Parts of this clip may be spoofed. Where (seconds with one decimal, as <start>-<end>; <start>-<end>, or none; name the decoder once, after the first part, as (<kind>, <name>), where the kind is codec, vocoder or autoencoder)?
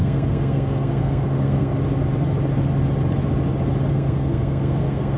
0.0-1.7 (codec, SNAC); 3.9-5.2